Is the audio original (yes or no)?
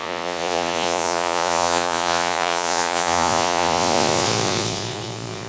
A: no